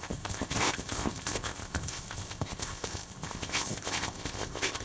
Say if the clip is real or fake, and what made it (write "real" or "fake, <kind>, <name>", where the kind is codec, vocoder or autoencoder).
fake, codec, ZipCodec